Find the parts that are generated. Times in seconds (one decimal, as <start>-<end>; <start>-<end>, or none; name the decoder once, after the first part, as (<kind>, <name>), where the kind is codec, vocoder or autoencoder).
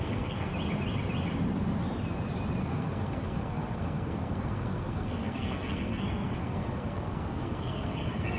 0.0-0.5 (codec, SNAC); 2.6-8.4